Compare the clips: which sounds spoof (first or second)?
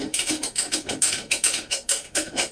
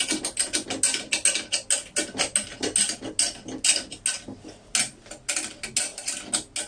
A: first